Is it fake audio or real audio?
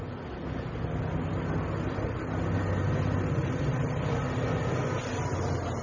real